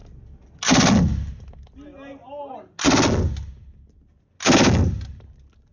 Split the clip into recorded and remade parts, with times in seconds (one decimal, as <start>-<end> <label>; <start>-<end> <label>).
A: 0.0-5.7 recorded

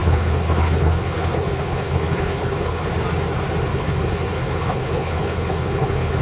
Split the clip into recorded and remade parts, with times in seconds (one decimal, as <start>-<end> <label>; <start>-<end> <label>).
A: 0.0-2.9 remade; 2.9-3.7 recorded; 3.7-6.2 remade

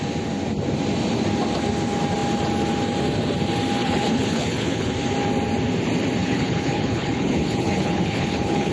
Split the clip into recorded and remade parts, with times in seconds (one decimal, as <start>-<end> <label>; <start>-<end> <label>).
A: 0.0-3.8 recorded; 3.8-4.9 remade; 4.9-6.2 recorded; 6.2-8.7 remade

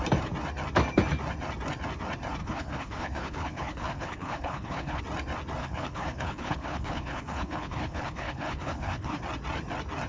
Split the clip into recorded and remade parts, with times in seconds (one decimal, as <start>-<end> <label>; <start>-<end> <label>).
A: 0.0-2.4 recorded; 2.4-5.0 remade; 5.0-5.6 recorded; 5.6-9.2 remade; 9.2-10.1 recorded

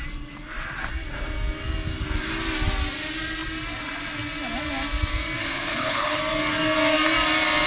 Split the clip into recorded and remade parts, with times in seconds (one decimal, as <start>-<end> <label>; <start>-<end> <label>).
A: 0.0-5.4 recorded; 5.4-6.2 remade; 6.2-7.7 recorded